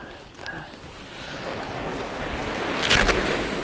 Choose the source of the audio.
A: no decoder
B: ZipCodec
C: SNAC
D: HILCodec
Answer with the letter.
A